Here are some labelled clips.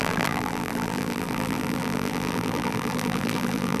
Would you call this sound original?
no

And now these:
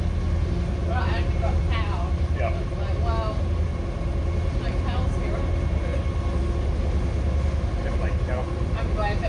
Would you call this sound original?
yes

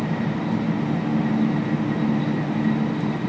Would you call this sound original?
yes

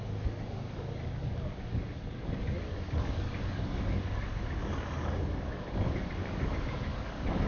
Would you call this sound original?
no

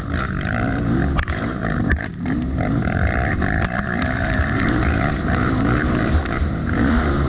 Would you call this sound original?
no